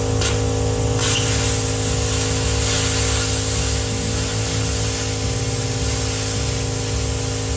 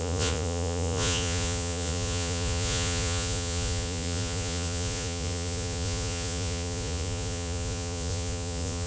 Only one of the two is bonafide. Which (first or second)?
first